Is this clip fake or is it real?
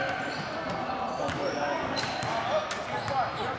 real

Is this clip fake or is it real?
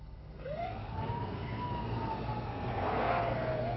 fake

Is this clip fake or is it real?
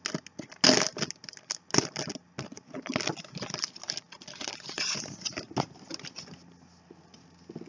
real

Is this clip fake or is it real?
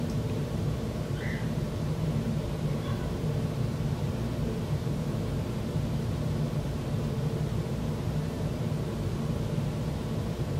fake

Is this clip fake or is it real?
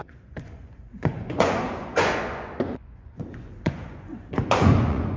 fake